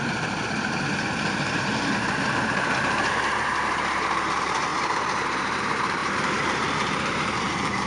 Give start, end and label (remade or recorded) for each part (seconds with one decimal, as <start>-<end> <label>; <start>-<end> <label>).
0.0-4.7 remade; 4.7-5.2 recorded; 5.2-7.9 remade